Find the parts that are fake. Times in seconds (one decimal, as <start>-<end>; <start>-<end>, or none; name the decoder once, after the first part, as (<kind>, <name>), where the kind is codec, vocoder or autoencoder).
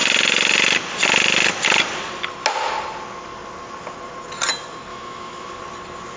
4.9-5.6 (autoencoder, DAC-VAE)